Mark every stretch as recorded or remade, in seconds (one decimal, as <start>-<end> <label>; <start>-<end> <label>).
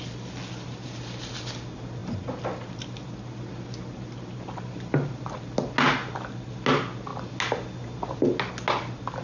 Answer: 0.0-9.2 recorded